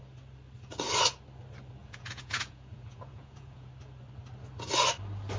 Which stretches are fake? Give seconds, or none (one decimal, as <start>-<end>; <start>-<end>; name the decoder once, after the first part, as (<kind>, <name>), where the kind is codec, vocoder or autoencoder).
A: 1.8-3.7 (vocoder, Vocos)